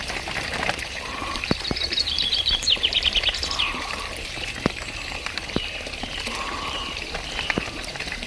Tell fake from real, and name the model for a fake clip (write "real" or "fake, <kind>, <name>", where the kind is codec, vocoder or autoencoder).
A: fake, vocoder, BigVGAN v2